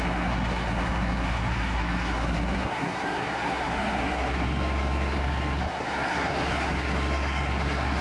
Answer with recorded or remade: remade